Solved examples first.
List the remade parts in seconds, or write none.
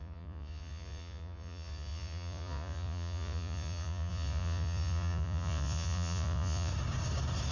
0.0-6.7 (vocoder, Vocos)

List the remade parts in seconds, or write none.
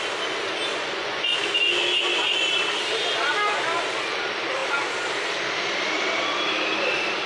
0.7-1.4 (vocoder, Vocos)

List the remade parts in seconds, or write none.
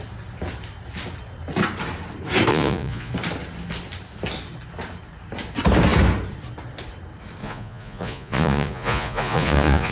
2.5-3.1 (vocoder, Vocos); 7.4-9.9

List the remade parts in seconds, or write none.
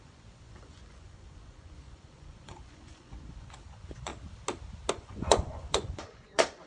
0.0-4.1 (vocoder, Vocos); 4.9-6.7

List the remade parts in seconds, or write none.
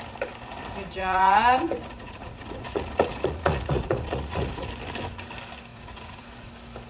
1.0-4.7 (vocoder, Vocos); 5.7-6.5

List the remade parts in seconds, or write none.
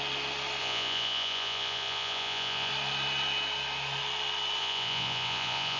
0.6-2.7 (vocoder, Vocos); 4.6-5.8